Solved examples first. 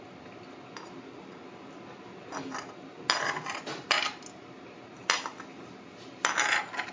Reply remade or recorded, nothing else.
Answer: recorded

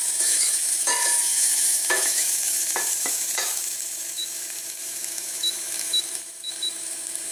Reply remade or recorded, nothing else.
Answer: remade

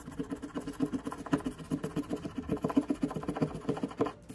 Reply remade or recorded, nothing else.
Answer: recorded